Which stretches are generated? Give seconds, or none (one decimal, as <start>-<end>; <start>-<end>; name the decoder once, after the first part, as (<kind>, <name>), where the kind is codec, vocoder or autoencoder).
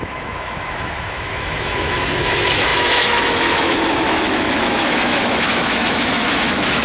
0.0-6.8 (autoencoder, DAC-VAE)